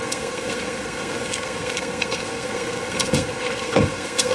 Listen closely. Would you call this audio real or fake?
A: fake